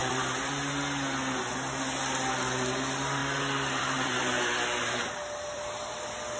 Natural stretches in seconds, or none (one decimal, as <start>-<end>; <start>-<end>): 0.7-3.2; 6.0-6.4